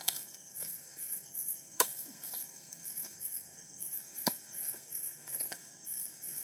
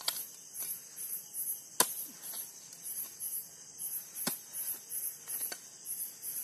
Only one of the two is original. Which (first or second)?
second